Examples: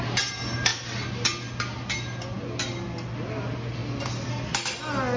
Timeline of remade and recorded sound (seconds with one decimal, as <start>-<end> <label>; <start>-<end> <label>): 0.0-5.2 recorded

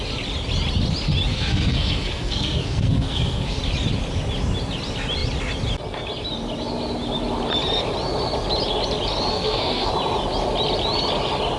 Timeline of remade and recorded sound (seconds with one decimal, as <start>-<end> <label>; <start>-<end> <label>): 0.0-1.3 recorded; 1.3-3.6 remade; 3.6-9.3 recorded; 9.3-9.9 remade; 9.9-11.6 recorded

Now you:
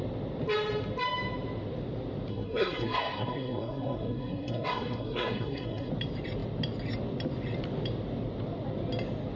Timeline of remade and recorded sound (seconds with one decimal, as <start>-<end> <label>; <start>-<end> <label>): 0.0-2.3 recorded; 2.3-5.9 remade; 5.9-9.4 recorded

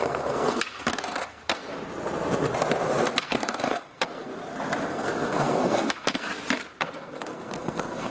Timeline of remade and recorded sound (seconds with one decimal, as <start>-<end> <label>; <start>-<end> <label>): 0.0-1.7 remade; 1.7-3.2 recorded; 3.2-4.3 remade; 4.3-4.9 recorded; 4.9-6.3 remade; 6.3-6.8 recorded; 6.8-8.1 remade

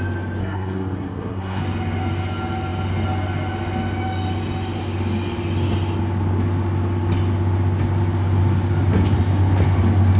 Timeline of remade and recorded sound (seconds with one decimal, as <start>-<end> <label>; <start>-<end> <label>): 0.0-0.4 recorded; 0.4-1.6 remade; 1.6-10.2 recorded

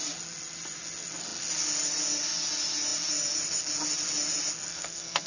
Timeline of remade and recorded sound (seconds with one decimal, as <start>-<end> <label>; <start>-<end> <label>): 0.0-4.7 recorded; 4.7-5.3 remade

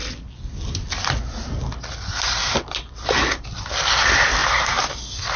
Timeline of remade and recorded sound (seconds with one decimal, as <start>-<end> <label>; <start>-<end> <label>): 0.0-5.4 recorded

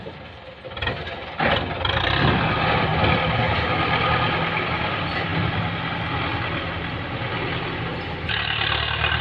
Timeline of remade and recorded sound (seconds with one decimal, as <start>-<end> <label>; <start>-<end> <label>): 0.0-9.2 recorded